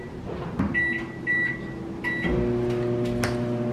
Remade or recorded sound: recorded